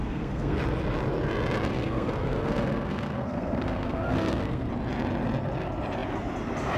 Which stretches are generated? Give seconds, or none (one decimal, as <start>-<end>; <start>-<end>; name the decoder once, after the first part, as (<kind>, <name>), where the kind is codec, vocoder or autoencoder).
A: 0.0-0.6 (codec, SNAC); 1.7-4.7